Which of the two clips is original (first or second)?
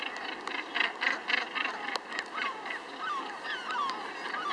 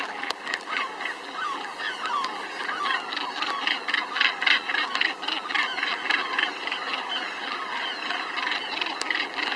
first